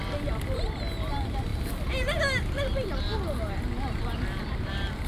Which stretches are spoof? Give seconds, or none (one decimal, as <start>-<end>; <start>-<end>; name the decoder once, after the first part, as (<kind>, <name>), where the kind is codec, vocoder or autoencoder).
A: none